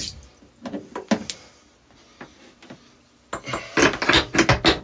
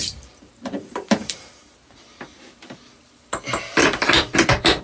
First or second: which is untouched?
first